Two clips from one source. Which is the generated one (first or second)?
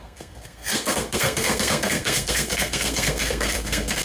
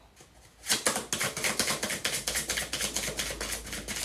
first